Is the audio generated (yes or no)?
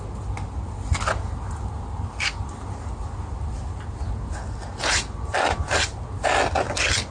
no